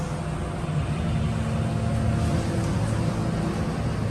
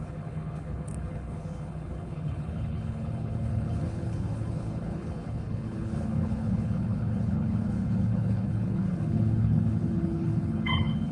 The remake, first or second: second